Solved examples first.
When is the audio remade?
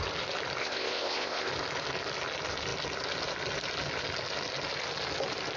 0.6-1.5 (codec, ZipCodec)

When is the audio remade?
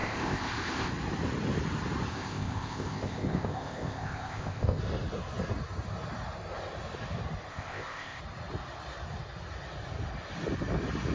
0.0-0.9 (codec, ZipCodec); 2.1-4.8; 7.5-8.2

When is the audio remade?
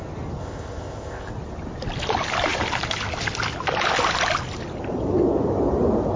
0.4-1.3 (codec, ZipCodec)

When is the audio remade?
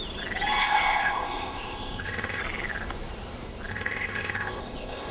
0.6-2.4 (codec, ZipCodec); 3.7-5.1